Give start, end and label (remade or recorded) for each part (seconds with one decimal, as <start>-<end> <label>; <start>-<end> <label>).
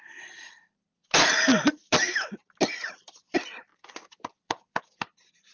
0.0-5.5 remade